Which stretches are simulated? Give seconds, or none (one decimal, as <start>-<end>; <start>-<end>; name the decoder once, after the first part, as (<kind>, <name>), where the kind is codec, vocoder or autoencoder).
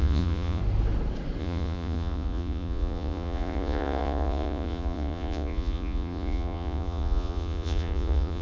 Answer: 0.0-0.6 (vocoder, Vocos); 1.4-8.4